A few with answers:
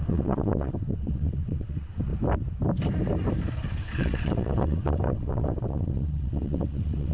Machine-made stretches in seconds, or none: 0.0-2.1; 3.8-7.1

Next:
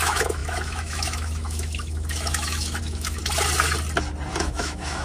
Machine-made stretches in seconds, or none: 0.0-3.2; 4.4-5.0

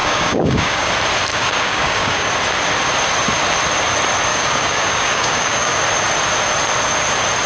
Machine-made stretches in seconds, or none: 0.0-0.9; 1.3-2.3; 4.3-5.8